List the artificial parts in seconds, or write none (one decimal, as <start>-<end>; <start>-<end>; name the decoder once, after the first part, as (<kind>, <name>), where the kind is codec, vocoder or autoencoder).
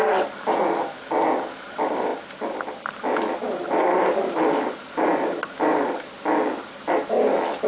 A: none